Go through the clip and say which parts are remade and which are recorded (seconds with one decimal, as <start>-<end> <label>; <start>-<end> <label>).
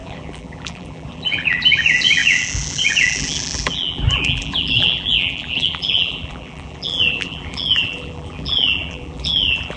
0.0-9.8 remade